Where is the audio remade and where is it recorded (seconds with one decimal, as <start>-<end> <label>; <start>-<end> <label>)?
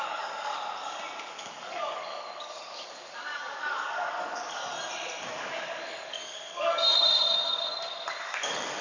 0.0-0.5 remade; 0.5-1.3 recorded; 1.3-4.6 remade; 4.6-5.2 recorded; 5.2-8.8 remade